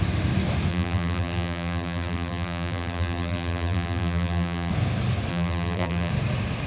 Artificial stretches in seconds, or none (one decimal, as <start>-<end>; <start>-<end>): 0.7-4.7; 5.3-6.1